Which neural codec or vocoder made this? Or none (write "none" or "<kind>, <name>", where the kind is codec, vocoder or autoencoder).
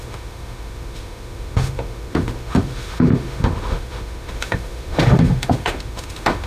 autoencoder, DAC-VAE